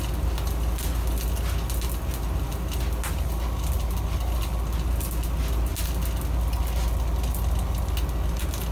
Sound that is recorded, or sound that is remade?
recorded